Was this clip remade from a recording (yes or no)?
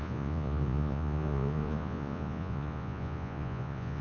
yes